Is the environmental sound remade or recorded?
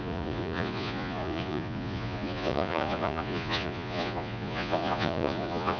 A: remade